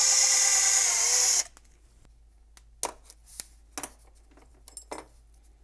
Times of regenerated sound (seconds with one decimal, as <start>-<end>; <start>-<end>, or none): 0.0-0.6

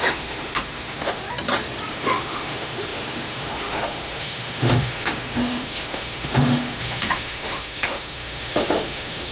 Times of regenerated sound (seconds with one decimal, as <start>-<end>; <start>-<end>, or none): 0.0-1.2; 1.9-9.3

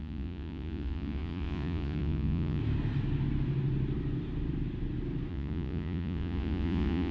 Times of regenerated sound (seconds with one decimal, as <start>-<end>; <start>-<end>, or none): 0.0-2.6; 5.3-7.1